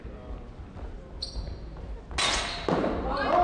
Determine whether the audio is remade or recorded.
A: recorded